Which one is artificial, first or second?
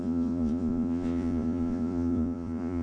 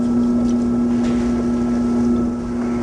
first